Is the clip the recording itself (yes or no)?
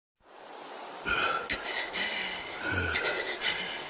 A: yes